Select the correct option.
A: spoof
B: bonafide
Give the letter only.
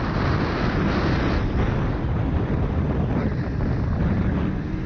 B